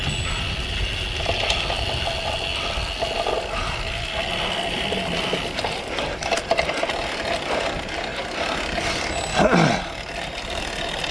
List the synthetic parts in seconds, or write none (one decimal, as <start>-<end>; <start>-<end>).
none